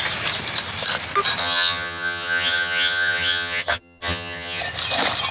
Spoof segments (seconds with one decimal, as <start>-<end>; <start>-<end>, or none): 1.4-4.6